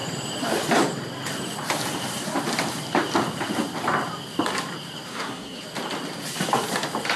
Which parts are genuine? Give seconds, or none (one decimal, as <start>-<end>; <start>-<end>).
0.0-5.1; 5.6-7.2

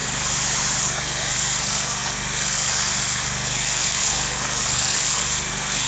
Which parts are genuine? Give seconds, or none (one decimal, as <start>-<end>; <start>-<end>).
0.0-0.8

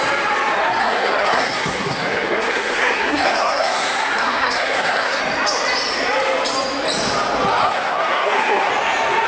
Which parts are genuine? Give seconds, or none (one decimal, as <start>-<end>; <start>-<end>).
0.0-0.8; 5.2-7.6; 8.7-9.3